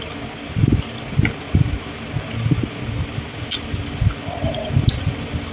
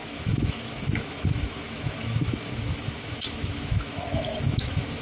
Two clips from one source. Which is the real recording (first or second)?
first